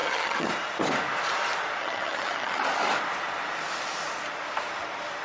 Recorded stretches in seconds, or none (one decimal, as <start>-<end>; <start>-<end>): 0.5-1.8; 2.6-5.2